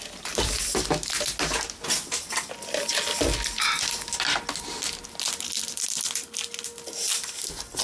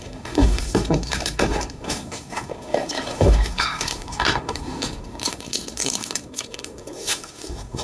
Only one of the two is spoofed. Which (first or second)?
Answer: second